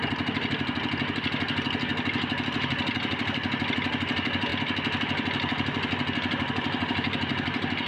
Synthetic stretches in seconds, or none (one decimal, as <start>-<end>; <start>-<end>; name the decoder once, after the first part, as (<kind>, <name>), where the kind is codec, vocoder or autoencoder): none